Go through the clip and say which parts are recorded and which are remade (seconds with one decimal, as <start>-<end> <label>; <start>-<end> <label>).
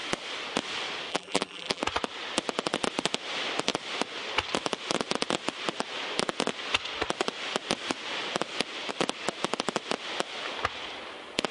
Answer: 0.0-1.1 recorded; 1.1-1.8 remade; 1.8-11.5 recorded